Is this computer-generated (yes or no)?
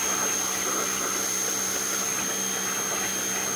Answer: no